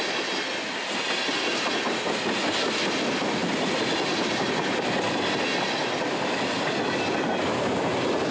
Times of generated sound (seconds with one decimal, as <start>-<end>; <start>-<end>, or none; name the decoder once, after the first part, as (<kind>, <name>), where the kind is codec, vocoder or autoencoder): none